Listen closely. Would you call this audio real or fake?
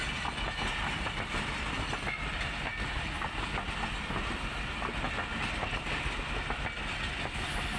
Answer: real